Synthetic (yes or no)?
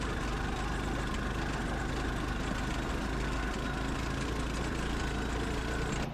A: no